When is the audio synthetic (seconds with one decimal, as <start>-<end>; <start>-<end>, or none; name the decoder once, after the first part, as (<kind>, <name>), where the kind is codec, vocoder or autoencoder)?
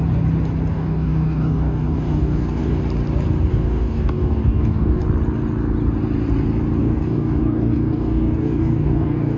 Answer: 0.7-2.8 (codec, DAC); 3.5-5.0; 6.8-9.4